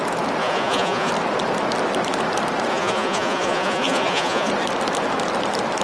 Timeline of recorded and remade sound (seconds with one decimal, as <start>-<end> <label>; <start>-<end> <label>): 0.0-0.4 recorded; 0.4-1.1 remade; 1.1-2.7 recorded; 2.7-4.5 remade; 4.5-5.8 recorded